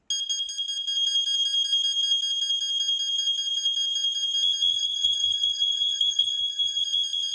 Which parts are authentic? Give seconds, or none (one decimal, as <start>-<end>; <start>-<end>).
0.0-4.7; 6.8-7.3